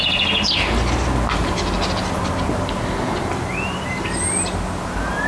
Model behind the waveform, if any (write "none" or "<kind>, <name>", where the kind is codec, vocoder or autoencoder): none